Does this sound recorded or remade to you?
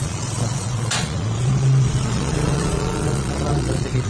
remade